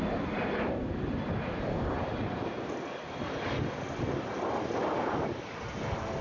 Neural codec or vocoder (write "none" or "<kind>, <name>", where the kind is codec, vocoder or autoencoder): none